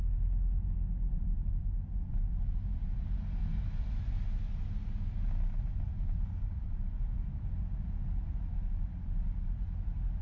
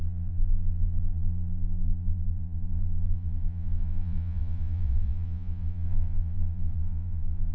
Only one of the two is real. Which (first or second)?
first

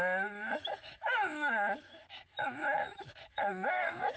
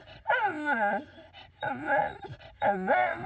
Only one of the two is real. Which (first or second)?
second